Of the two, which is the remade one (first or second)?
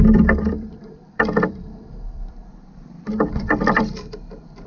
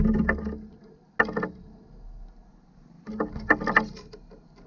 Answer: first